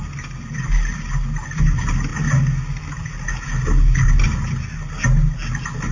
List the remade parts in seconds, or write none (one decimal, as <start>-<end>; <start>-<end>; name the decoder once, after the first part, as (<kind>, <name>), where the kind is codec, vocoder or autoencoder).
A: none